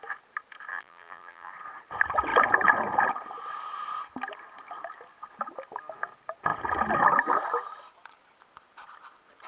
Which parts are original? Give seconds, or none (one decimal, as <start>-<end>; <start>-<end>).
0.0-0.7; 1.5-9.5